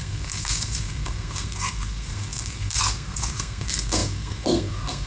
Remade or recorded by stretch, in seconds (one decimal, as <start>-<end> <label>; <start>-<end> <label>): 0.0-5.1 remade